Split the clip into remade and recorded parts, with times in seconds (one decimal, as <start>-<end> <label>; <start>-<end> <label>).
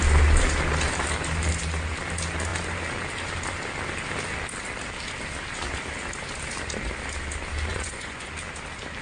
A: 0.0-7.7 recorded; 7.7-8.3 remade; 8.3-9.0 recorded